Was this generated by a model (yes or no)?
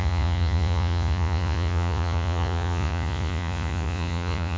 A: yes